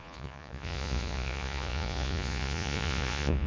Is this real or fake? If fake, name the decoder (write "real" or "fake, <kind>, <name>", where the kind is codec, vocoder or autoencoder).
fake, vocoder, Vocos